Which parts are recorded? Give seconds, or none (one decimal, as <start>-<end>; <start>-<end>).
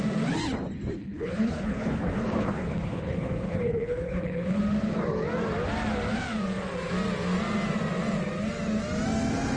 0.0-1.0; 4.6-9.6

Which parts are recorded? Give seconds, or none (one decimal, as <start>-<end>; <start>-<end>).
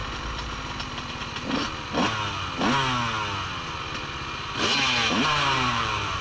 0.0-1.1; 1.6-5.1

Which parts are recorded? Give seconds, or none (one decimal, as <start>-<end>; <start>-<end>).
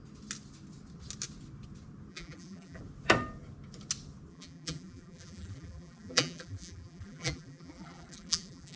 0.0-2.1; 2.8-4.3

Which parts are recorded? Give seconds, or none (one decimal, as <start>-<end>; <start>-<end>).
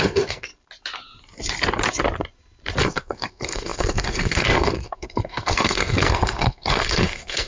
0.5-2.8